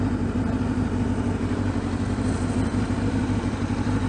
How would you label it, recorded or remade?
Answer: recorded